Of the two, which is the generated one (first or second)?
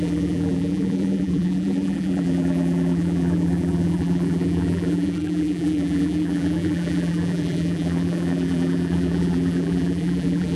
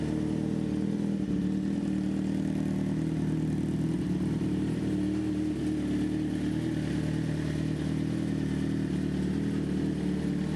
first